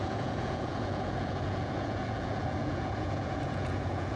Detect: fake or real fake